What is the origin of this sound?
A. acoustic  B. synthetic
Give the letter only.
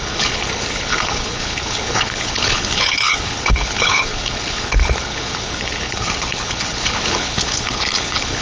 B